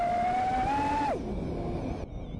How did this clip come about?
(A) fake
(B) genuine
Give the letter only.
B